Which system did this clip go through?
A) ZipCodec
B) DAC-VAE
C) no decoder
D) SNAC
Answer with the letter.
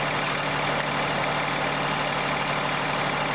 C